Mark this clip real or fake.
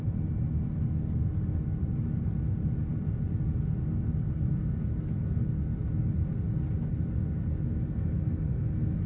real